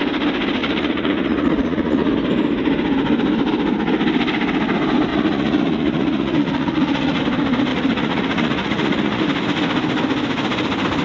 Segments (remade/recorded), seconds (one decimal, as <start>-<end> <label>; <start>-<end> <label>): 0.0-0.6 recorded; 0.6-2.1 remade; 2.1-5.1 recorded; 5.1-7.2 remade; 7.2-7.7 recorded; 7.7-9.2 remade; 9.2-11.0 recorded